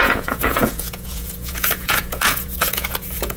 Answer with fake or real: fake